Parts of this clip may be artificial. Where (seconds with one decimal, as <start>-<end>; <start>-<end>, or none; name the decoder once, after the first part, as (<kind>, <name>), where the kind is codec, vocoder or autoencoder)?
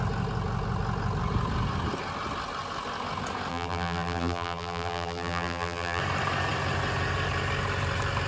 3.5-6.0 (vocoder, BigVGAN v2)